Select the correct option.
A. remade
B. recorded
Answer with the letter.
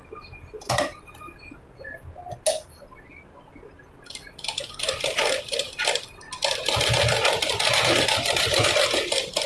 B